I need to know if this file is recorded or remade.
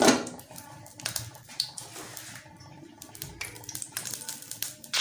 recorded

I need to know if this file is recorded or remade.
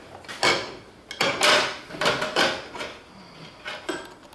recorded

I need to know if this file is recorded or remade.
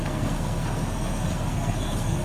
remade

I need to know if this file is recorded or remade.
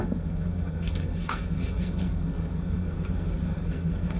remade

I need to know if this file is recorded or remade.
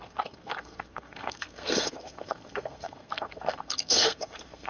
remade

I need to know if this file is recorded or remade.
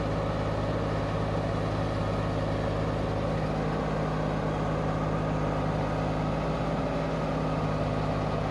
recorded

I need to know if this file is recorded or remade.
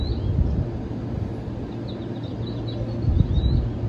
recorded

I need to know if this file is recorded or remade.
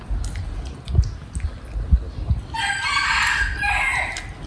recorded